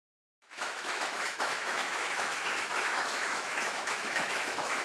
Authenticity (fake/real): fake